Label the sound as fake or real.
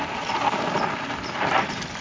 real